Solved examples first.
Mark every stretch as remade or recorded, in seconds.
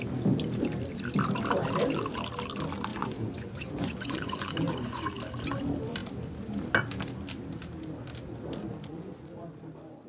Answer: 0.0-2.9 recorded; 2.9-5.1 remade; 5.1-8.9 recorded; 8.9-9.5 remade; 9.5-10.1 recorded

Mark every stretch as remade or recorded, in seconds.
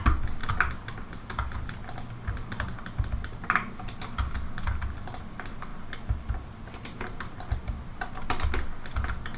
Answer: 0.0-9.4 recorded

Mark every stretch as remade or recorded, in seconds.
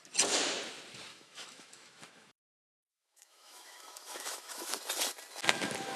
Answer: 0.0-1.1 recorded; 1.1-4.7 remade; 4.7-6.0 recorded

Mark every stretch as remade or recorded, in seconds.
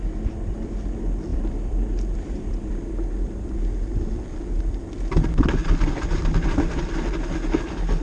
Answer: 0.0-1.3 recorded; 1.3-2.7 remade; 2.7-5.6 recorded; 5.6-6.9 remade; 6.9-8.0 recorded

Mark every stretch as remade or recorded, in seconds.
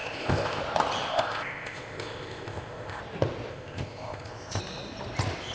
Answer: 0.0-0.6 remade; 0.6-1.1 recorded; 1.1-3.0 remade; 3.0-3.5 recorded; 3.5-4.6 remade; 4.6-5.5 recorded